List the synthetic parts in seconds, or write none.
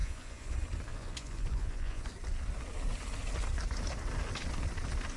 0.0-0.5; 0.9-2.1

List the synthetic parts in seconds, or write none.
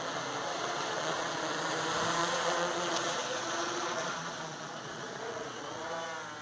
0.5-1.7; 2.2-5.9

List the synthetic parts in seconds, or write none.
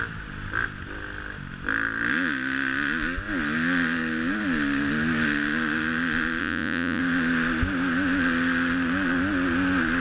6.4-7.0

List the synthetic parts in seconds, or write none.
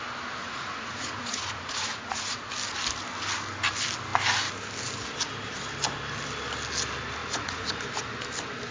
0.4-2.5; 7.2-7.8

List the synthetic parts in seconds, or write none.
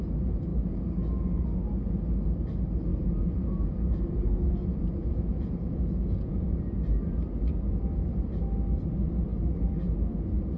2.9-6.6